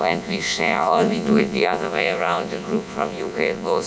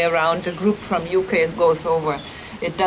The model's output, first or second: first